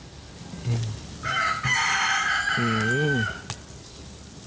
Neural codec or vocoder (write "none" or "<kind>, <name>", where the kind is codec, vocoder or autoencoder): none